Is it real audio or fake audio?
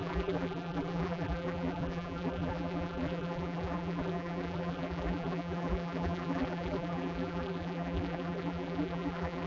fake